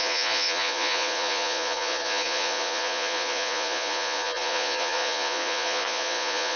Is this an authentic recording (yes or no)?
no